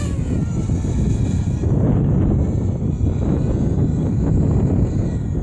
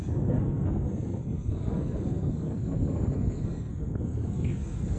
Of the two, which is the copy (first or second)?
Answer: second